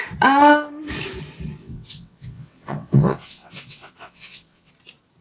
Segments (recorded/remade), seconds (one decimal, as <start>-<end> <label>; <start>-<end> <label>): 0.0-1.6 recorded; 1.6-4.7 remade; 4.7-5.2 recorded